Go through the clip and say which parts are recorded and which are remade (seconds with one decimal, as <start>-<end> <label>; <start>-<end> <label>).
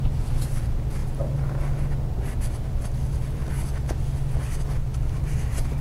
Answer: 0.0-4.9 recorded; 4.9-5.8 remade